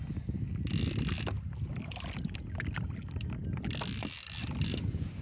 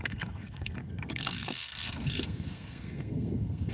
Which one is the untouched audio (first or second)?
first